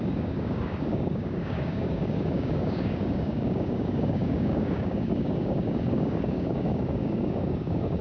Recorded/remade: remade